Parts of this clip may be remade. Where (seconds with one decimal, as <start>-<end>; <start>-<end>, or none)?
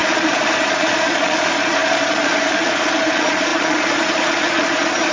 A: 0.0-5.1